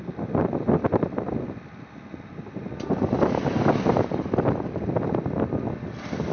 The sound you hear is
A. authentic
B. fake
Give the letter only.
A